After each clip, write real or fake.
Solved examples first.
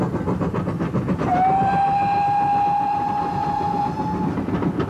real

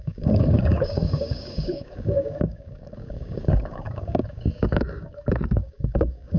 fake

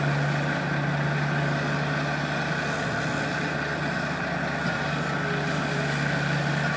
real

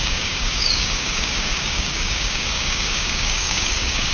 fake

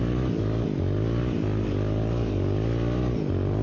real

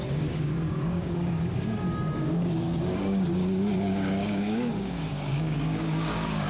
fake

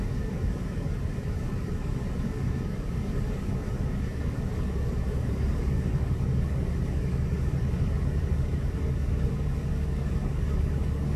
fake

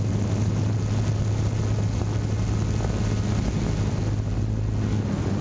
real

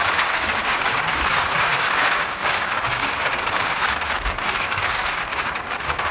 fake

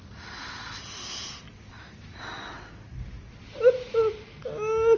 real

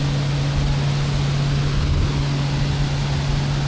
real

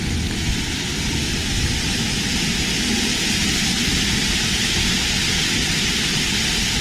real